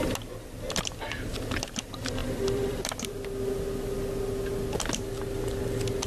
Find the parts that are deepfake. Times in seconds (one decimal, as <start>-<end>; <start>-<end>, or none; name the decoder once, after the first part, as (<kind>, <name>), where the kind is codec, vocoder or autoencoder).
2.2-3.1 (vocoder, BigVGAN v2)